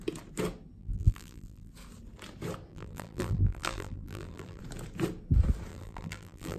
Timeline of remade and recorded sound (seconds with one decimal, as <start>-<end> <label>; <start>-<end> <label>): 0.0-0.8 recorded; 0.8-1.7 remade; 1.7-2.7 recorded; 2.7-4.6 remade; 4.6-5.7 recorded; 5.7-6.6 remade